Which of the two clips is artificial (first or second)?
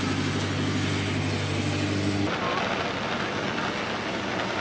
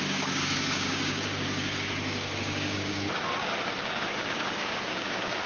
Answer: second